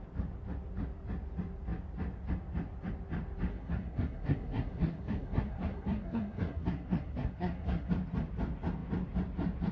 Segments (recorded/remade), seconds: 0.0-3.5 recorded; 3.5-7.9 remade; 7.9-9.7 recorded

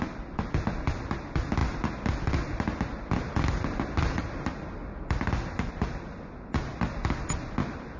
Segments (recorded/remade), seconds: 0.0-8.0 recorded

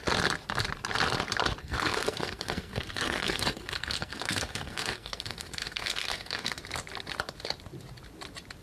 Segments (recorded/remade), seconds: 0.0-1.6 recorded; 1.6-6.6 remade; 6.6-8.6 recorded

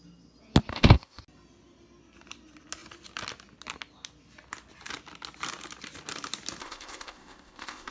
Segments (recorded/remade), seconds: 0.0-0.7 recorded; 0.7-1.2 remade; 1.2-6.6 recorded; 6.6-7.9 remade

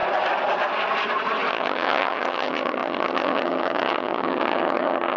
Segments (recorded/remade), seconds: 0.0-1.5 recorded; 1.5-5.2 remade

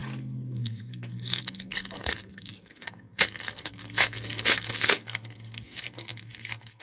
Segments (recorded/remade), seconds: 0.0-6.8 remade